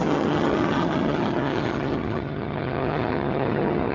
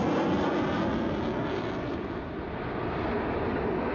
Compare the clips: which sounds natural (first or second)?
second